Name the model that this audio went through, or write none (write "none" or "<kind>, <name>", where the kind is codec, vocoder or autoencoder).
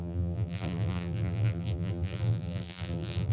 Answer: vocoder, BigVGAN v2